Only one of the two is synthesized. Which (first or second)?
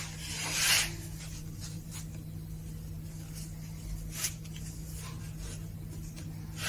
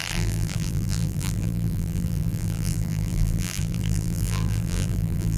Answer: second